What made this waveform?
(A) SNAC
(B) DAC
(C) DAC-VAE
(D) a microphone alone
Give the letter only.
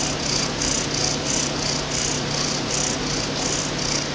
D